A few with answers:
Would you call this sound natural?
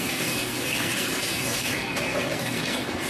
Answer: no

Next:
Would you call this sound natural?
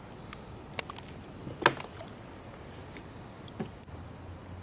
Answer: yes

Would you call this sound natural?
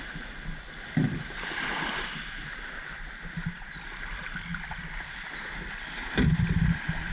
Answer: yes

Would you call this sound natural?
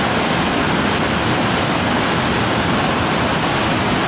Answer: yes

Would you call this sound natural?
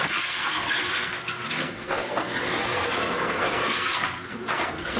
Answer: no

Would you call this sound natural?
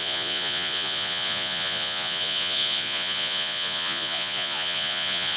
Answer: no